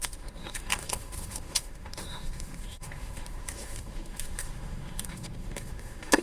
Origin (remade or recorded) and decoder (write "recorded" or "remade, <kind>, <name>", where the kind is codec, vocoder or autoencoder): remade, autoencoder, DAC-VAE